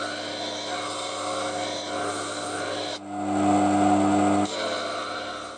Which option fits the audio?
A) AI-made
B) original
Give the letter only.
B